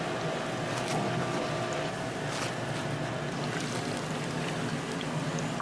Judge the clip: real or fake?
real